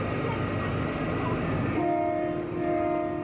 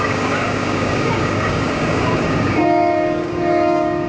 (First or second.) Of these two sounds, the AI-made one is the second